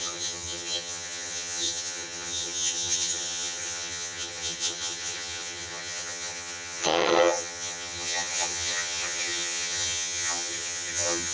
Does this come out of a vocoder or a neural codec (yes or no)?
yes